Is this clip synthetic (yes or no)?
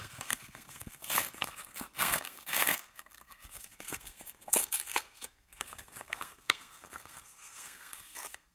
yes